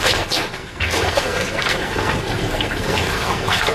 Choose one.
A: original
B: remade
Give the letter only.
B